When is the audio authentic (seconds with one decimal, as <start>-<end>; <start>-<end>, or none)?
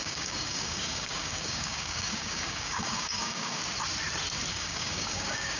3.6-4.5